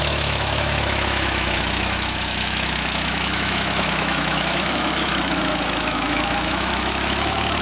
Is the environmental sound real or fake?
fake